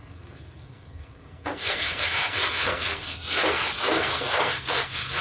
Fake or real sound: fake